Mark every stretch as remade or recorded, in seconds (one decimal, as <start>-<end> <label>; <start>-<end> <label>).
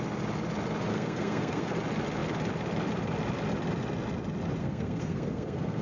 0.0-0.9 recorded; 0.9-1.7 remade; 1.7-4.6 recorded; 4.6-5.8 remade